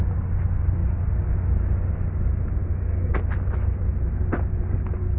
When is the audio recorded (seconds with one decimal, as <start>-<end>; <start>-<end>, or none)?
0.0-2.6; 3.2-5.2

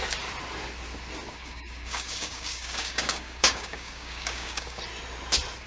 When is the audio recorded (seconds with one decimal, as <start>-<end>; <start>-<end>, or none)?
0.0-1.4; 4.8-5.7

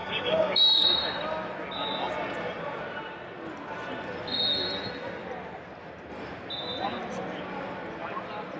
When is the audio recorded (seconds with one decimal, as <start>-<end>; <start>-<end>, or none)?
0.6-8.6

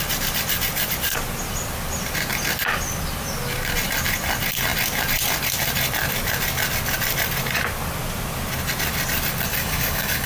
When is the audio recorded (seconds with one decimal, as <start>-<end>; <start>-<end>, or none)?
0.0-9.5

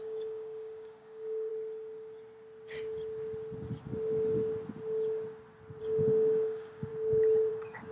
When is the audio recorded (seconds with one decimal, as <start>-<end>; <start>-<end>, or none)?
1.5-5.8; 6.9-7.5

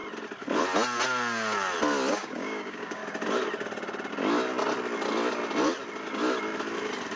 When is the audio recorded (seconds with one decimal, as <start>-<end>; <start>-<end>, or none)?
0.0-2.1; 3.0-7.2

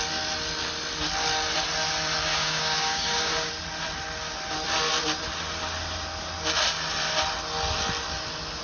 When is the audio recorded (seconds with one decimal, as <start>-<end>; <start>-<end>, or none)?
0.0-2.3; 3.5-8.6